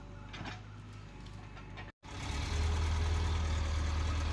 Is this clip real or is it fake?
real